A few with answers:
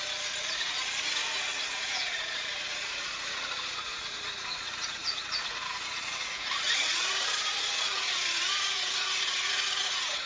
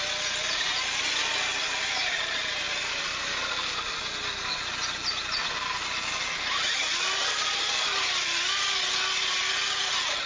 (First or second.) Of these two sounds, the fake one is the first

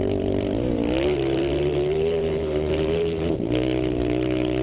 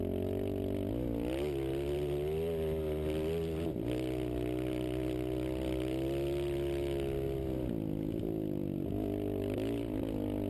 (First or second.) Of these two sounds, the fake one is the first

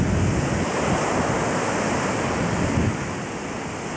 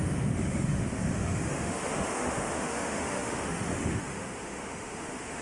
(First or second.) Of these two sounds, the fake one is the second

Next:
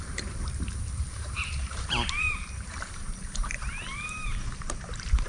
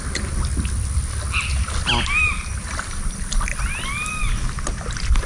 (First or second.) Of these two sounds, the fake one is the first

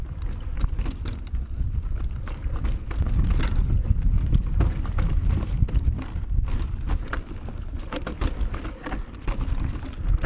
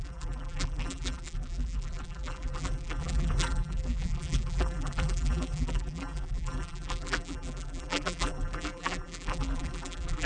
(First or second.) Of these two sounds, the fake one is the second